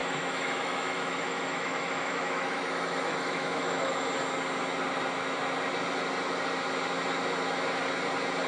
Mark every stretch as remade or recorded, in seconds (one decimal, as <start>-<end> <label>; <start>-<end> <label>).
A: 0.0-4.1 remade; 4.1-8.5 recorded